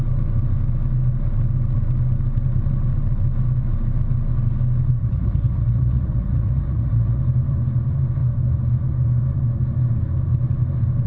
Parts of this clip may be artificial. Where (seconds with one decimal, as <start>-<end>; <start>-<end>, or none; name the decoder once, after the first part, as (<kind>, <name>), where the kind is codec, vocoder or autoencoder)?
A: 5.0-7.2 (vocoder, Vocos)